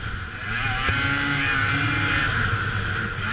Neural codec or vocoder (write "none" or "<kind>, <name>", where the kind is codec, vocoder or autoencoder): none